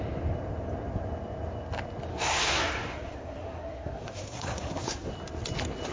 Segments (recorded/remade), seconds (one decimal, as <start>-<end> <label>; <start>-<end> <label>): 0.0-2.1 recorded; 2.1-5.1 remade; 5.1-5.9 recorded